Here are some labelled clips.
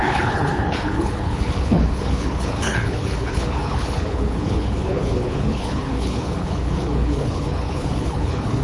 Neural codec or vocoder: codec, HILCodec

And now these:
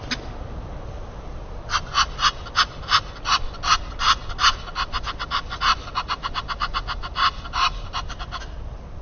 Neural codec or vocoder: none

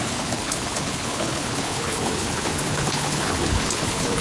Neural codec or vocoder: codec, HILCodec